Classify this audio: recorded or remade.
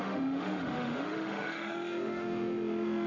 remade